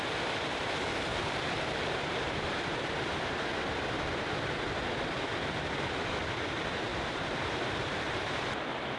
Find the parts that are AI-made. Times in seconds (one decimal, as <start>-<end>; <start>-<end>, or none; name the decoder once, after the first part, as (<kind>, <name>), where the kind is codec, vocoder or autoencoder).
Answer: 1.1-2.7 (vocoder, BigVGAN v2); 6.9-8.4